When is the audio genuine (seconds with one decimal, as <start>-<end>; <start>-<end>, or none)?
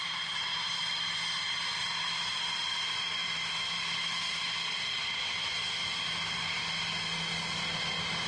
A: 0.0-8.3